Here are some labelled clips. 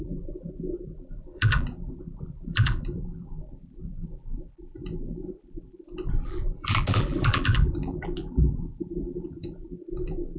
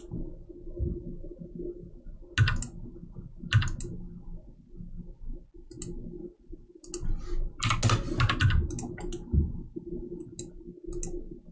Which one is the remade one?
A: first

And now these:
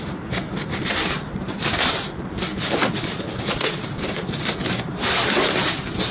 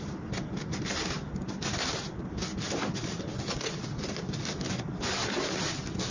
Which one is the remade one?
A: first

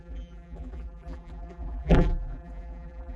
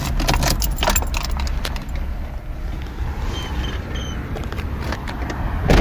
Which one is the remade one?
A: first